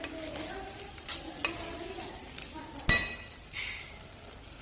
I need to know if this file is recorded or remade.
recorded